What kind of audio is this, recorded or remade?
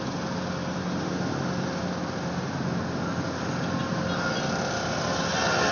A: recorded